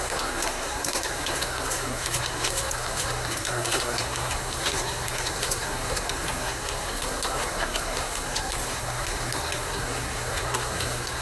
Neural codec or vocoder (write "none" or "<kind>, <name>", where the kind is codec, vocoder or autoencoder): codec, SNAC